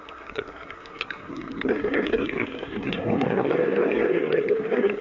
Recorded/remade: remade